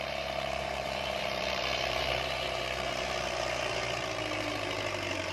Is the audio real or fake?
fake